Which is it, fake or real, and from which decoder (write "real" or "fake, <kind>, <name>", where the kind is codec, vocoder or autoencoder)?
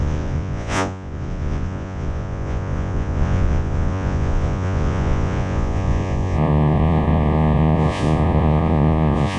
fake, vocoder, Vocos